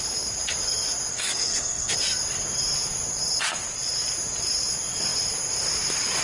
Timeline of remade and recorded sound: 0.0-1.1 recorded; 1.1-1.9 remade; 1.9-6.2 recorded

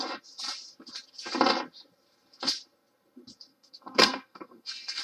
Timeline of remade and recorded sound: 0.0-3.5 recorded; 3.5-5.0 remade

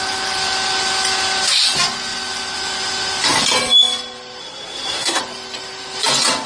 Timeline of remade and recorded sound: 0.0-4.4 recorded; 4.4-5.2 remade; 5.2-6.5 recorded

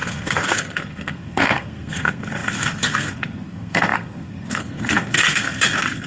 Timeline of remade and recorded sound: 0.0-6.1 remade

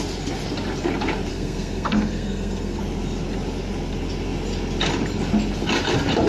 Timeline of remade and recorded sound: 0.0-1.3 recorded; 1.3-2.8 remade; 2.8-6.3 recorded